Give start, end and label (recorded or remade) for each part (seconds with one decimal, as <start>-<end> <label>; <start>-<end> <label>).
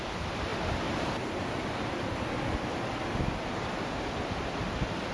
0.0-5.1 recorded